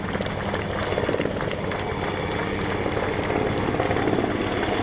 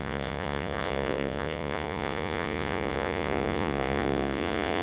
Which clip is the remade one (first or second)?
second